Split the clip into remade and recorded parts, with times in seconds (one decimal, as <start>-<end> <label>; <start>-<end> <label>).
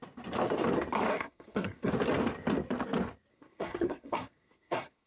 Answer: 0.0-1.1 recorded; 1.1-1.9 remade; 1.9-3.3 recorded; 3.3-5.1 remade